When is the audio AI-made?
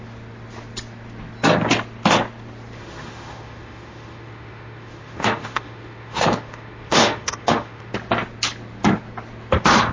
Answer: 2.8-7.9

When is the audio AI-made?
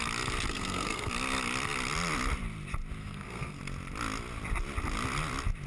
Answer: 0.5-1.1; 3.0-3.6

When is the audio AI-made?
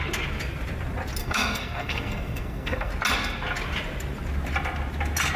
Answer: 1.2-2.9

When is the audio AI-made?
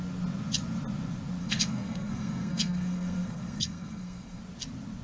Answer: 1.4-4.4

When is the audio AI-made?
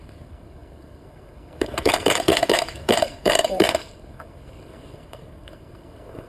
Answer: 0.0-6.3